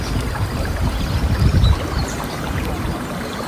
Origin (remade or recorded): remade